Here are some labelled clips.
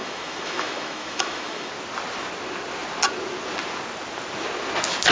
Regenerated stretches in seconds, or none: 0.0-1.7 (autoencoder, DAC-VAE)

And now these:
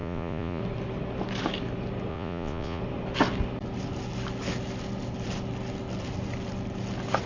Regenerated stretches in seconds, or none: 0.0-0.6 (vocoder, Vocos); 2.1-2.8